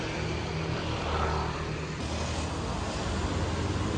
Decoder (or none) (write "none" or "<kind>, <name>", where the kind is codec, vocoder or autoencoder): none